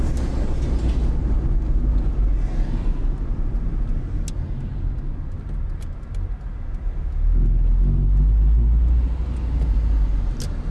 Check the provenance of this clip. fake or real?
real